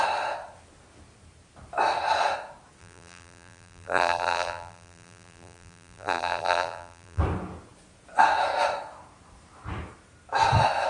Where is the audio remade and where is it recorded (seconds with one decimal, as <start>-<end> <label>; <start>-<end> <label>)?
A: 0.0-2.8 recorded; 2.8-7.2 remade; 7.2-10.9 recorded